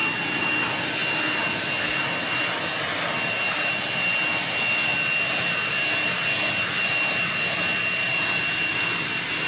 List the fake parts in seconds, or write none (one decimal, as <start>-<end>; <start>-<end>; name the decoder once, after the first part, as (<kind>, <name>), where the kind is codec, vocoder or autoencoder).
none